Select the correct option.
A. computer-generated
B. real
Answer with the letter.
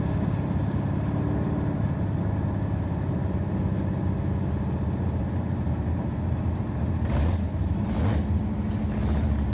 B